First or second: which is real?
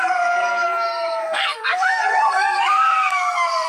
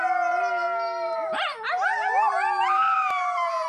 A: second